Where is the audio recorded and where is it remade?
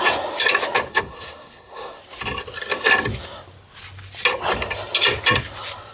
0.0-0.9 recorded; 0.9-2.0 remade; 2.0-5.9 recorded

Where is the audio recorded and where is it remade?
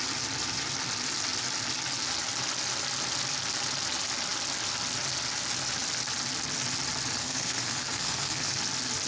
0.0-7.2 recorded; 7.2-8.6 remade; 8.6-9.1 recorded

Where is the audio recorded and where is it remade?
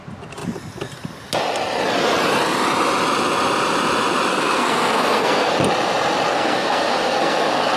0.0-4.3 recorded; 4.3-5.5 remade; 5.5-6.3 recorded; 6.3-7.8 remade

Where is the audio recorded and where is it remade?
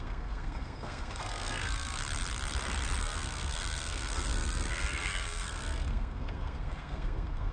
0.0-2.0 remade; 2.0-3.0 recorded; 3.0-7.5 remade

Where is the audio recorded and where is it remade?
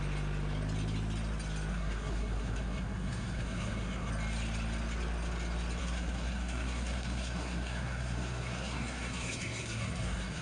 0.0-1.7 recorded; 1.7-4.1 remade; 4.1-5.8 recorded; 5.8-10.4 remade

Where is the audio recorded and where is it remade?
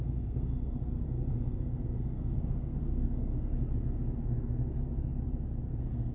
0.0-3.5 remade; 3.5-5.6 recorded; 5.6-6.1 remade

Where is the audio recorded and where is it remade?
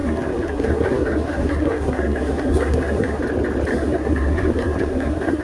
0.0-3.2 remade; 3.2-3.7 recorded; 3.7-5.4 remade